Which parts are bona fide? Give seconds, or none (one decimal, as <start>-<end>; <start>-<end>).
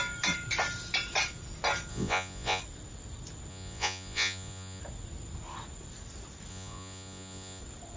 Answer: 0.0-1.9; 2.6-3.5; 4.8-6.5; 7.6-8.0